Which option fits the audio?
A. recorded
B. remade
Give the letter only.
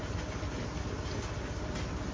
A